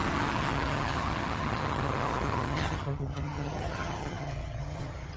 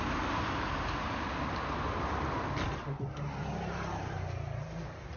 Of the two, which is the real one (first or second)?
second